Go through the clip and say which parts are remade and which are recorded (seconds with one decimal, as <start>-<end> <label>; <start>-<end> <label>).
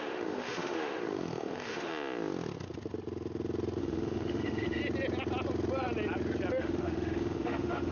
0.0-1.9 remade; 1.9-3.8 recorded; 3.8-4.8 remade; 4.8-6.6 recorded; 6.6-7.9 remade